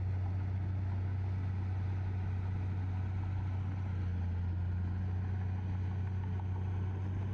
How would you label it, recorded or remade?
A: recorded